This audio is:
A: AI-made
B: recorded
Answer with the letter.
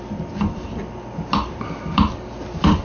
B